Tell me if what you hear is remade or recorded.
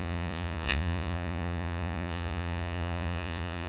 remade